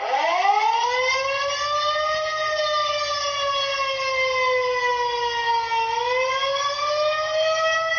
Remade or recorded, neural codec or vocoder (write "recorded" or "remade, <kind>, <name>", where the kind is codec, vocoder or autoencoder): recorded